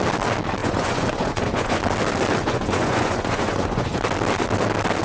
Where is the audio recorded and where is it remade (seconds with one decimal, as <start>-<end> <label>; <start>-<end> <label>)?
0.0-0.6 recorded; 0.6-1.8 remade; 1.8-2.4 recorded; 2.4-4.0 remade; 4.0-5.0 recorded